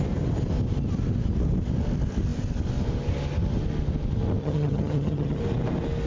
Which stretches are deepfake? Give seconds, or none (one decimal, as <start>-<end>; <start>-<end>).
4.4-5.4